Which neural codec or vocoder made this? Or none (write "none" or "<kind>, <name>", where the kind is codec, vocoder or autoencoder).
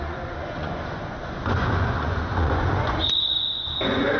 vocoder, Vocos